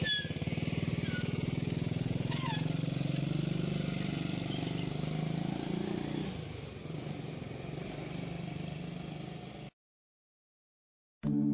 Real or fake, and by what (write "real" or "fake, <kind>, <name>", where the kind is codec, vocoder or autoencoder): real